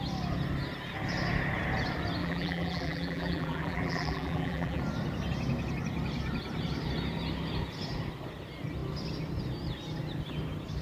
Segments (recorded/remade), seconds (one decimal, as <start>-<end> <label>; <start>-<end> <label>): 0.0-2.2 recorded; 2.2-4.8 remade; 4.8-10.8 recorded